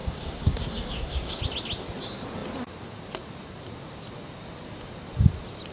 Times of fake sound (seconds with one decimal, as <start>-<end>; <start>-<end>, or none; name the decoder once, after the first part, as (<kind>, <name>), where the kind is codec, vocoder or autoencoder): 0.0-1.4 (codec, SNAC)